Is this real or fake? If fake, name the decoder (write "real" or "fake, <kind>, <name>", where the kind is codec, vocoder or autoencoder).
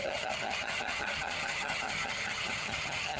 fake, vocoder, HiFi-GAN